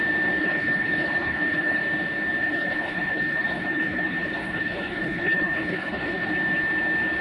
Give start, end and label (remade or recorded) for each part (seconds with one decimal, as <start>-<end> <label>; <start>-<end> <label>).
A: 0.0-0.4 recorded; 0.4-1.8 remade; 1.8-2.4 recorded; 2.4-6.3 remade; 6.3-7.2 recorded